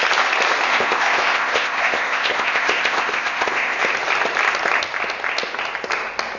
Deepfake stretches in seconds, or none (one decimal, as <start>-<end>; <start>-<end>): 0.7-3.8